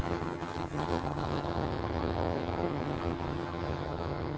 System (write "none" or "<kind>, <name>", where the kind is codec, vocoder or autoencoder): vocoder, HiFi-GAN